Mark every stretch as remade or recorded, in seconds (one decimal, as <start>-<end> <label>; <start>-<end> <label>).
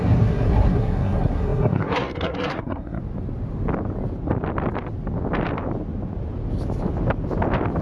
0.0-3.0 remade; 3.0-7.8 recorded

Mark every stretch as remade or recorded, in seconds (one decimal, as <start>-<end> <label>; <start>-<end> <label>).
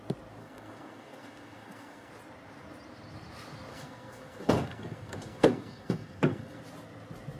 0.0-0.4 recorded; 0.4-2.1 remade; 2.1-3.7 recorded; 3.7-6.6 remade; 6.6-7.4 recorded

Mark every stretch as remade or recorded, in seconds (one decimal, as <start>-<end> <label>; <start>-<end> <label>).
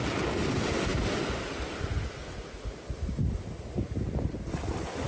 0.0-5.1 recorded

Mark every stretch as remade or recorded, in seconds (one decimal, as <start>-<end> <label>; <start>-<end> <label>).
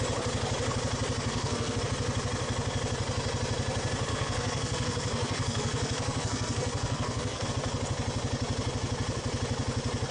0.0-1.3 recorded; 1.3-1.8 remade; 1.8-4.1 recorded; 4.1-7.5 remade; 7.5-10.1 recorded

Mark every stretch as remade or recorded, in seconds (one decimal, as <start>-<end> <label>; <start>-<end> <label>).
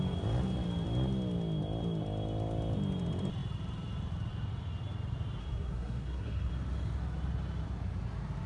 0.0-5.4 recorded; 5.4-6.5 remade; 6.5-8.5 recorded